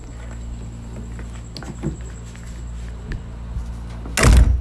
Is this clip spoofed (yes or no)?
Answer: no